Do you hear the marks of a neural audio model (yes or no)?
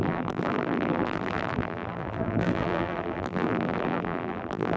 yes